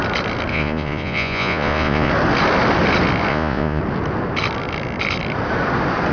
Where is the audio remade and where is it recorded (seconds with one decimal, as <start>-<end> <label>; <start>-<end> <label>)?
0.0-0.5 recorded; 0.5-2.1 remade; 2.1-3.3 recorded; 3.3-3.8 remade; 3.8-6.1 recorded